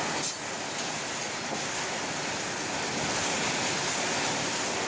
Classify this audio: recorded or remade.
recorded